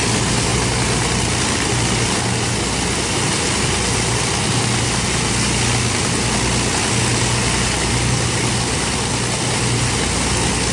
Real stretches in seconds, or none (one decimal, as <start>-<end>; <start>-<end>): 0.0-10.7